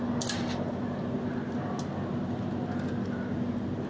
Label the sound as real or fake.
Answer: real